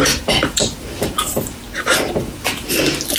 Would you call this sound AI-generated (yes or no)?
no